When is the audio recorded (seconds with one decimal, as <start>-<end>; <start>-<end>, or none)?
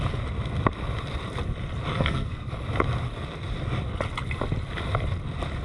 0.0-1.9; 2.5-5.6